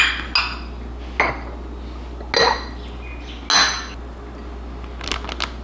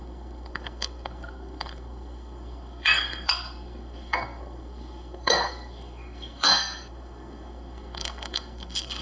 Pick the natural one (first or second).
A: first